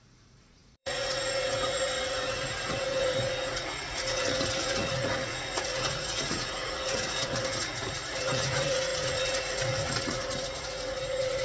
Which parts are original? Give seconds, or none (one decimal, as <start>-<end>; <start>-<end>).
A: none